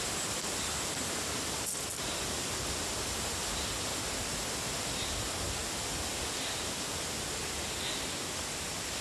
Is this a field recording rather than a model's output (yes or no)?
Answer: yes